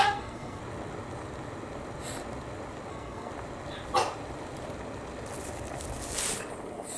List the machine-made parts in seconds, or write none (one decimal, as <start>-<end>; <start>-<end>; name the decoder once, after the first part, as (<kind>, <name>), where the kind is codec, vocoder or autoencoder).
0.0-0.6 (codec, SNAC); 2.9-3.3